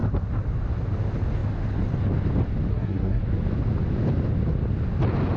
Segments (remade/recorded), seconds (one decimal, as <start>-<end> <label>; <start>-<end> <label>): 0.0-2.7 recorded; 2.7-3.2 remade; 3.2-5.4 recorded